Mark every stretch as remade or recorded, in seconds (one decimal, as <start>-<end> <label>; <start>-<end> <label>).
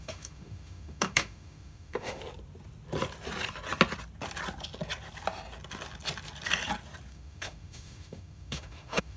0.0-2.2 remade; 2.2-7.1 recorded; 7.1-9.2 remade